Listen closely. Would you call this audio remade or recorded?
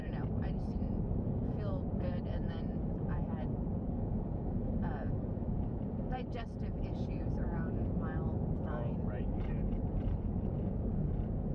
remade